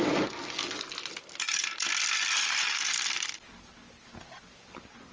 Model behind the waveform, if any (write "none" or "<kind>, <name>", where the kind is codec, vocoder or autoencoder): vocoder, BigVGAN v2